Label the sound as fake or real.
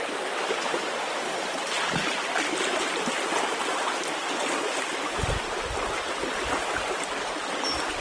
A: real